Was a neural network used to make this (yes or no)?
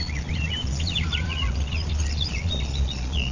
yes